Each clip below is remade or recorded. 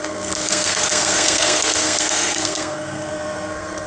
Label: remade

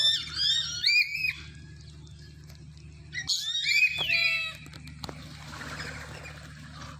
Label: recorded